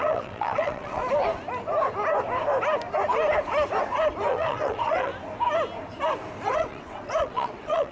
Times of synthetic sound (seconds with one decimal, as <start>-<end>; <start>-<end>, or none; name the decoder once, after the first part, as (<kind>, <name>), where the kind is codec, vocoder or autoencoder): 0.0-1.0 (vocoder, WaveNeXt); 4.3-5.1; 6.5-7.9